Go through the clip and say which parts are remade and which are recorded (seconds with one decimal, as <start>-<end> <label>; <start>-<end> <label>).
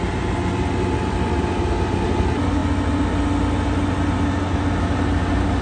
0.0-5.6 recorded